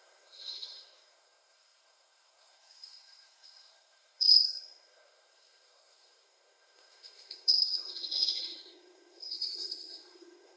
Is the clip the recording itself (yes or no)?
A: no